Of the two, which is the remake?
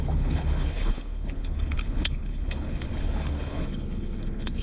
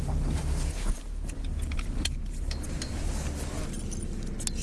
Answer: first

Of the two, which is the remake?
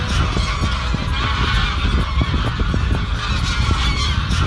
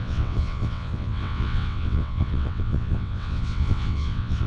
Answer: second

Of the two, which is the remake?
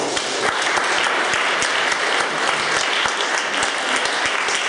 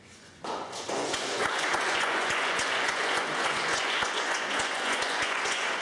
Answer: second